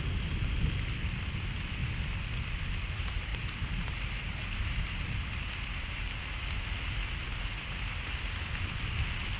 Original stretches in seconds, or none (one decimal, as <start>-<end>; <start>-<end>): 0.0-3.3; 5.1-9.4